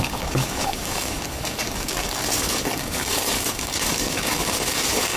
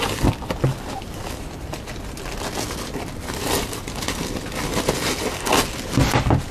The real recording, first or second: second